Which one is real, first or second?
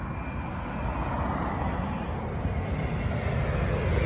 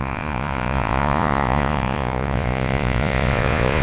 first